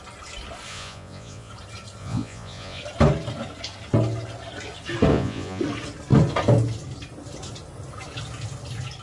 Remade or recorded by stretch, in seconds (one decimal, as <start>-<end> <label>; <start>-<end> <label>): 0.0-0.7 recorded; 0.7-1.5 remade; 1.5-2.0 recorded; 2.0-2.8 remade; 2.8-5.1 recorded; 5.1-5.6 remade; 5.6-9.0 recorded